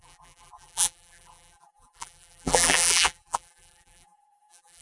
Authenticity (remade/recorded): remade